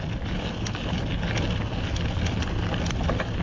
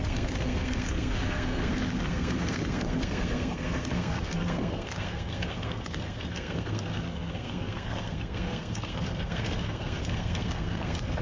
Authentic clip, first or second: first